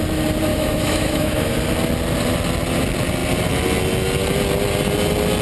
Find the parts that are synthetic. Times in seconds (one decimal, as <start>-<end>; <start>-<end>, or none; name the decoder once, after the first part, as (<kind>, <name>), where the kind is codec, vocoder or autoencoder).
0.5-1.5 (autoencoder, DAC-VAE)